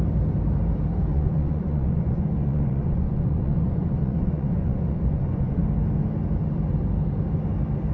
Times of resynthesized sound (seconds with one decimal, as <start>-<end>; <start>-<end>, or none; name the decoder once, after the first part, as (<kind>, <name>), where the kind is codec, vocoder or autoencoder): 1.1-5.6 (vocoder, Vocos)